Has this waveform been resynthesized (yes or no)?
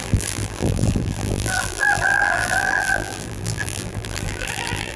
yes